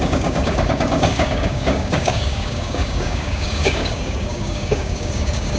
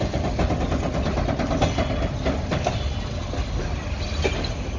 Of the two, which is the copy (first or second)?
first